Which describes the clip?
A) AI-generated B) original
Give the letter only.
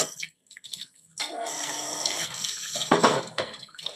A